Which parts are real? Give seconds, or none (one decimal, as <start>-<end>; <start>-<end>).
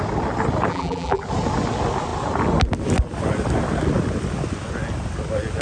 0.0-0.7; 1.2-5.6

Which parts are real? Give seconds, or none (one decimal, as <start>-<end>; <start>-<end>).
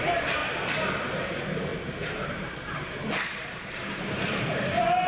0.4-1.1